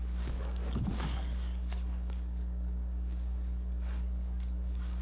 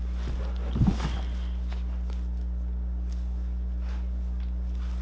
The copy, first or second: first